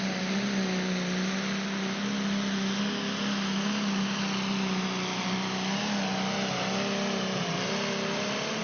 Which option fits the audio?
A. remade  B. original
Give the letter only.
B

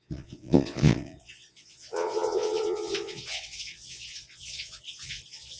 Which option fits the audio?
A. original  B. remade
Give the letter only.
B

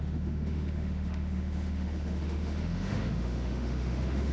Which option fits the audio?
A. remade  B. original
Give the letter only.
A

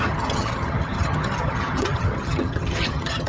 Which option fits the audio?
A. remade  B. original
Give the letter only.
A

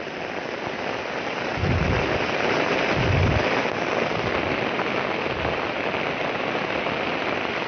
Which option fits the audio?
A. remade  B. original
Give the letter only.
B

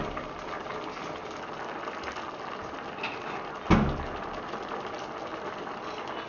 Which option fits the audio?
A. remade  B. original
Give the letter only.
B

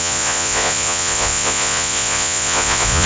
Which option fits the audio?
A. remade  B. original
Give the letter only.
A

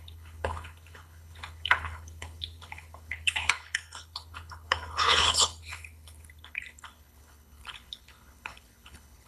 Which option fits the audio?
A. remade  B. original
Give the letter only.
A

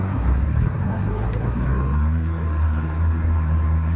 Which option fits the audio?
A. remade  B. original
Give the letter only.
A